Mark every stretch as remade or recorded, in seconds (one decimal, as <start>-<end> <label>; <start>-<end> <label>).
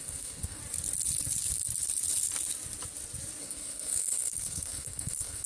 0.0-0.6 remade; 0.6-3.4 recorded; 3.4-5.5 remade